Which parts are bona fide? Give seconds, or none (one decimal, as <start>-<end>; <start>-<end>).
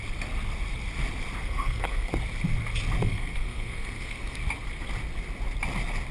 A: 0.0-1.4; 2.2-3.0; 4.4-6.1